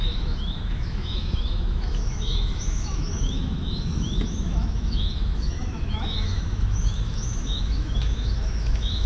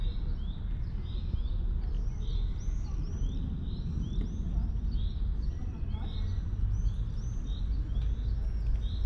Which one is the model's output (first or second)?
first